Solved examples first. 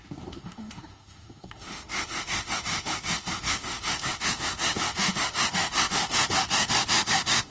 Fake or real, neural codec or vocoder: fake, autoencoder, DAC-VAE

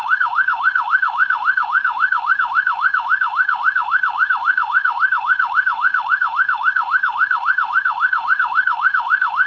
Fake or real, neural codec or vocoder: fake, autoencoder, DAC-VAE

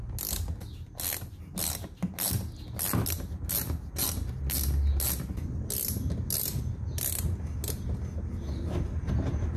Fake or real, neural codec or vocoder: real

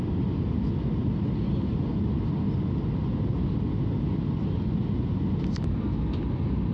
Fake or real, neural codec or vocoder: real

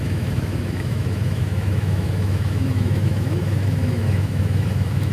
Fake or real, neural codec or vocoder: fake, autoencoder, DAC-VAE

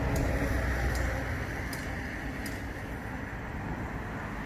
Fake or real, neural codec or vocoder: real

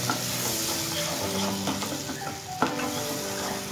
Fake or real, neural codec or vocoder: real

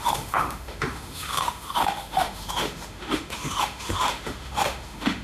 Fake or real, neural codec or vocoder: fake, autoencoder, DAC-VAE